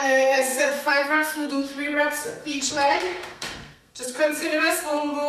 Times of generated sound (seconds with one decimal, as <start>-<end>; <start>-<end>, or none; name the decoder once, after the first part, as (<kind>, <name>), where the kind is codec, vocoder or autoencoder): 0.0-5.3 (codec, SNAC)

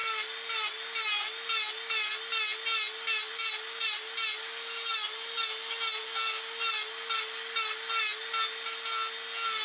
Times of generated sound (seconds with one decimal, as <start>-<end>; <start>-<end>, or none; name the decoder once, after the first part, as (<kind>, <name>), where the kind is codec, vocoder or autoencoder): none

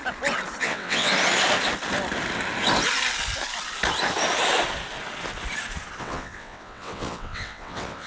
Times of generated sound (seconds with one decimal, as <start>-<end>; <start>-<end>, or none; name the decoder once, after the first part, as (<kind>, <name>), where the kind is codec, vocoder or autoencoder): 0.6-1.1 (vocoder, WaveNeXt); 6.0-8.1

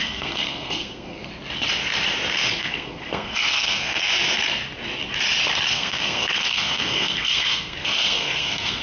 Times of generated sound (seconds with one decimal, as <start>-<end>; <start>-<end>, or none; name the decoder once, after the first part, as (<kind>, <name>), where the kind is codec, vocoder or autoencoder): 0.0-1.3 (codec, SNAC); 2.6-4.1; 5.7-8.8

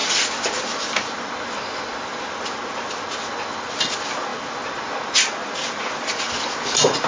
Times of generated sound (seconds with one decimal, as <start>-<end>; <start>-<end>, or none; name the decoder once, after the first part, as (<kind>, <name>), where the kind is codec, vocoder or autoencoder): none

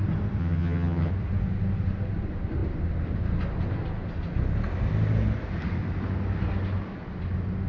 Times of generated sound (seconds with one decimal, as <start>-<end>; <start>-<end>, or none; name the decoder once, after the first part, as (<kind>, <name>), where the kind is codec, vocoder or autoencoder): 0.4-1.1 (vocoder, HiFi-GAN)

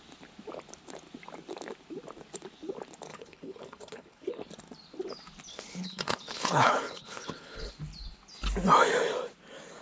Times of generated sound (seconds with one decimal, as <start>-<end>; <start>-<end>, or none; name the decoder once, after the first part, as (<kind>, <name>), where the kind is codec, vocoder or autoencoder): 3.1-4.5 (codec, HILCodec); 5.5-7.7

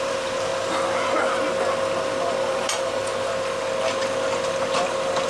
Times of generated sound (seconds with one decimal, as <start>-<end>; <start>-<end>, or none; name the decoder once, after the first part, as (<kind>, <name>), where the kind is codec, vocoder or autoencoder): 0.0-0.5 (vocoder, BigVGAN v2); 2.5-3.0